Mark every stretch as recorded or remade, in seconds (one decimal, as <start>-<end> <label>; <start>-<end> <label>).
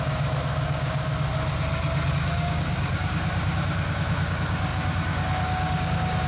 0.0-1.3 remade; 1.3-2.1 recorded; 2.1-6.3 remade